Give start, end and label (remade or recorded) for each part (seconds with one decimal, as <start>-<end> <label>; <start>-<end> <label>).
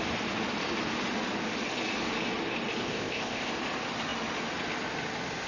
0.0-2.8 recorded; 2.8-3.5 remade; 3.5-5.5 recorded